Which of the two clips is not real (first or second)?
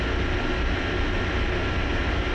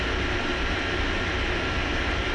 second